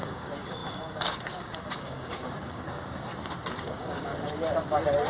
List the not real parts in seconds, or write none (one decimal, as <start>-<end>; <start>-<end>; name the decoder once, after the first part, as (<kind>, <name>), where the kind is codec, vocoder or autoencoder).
0.0-3.1 (codec, DAC); 3.6-4.1